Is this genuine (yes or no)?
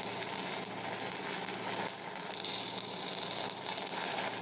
yes